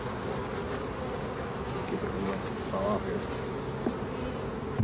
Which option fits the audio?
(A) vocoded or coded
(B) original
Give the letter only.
B